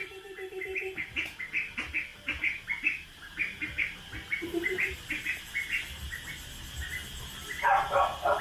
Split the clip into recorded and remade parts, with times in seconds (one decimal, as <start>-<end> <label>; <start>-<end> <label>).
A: 0.0-1.4 remade; 1.4-2.1 recorded; 2.1-5.4 remade; 5.4-8.4 recorded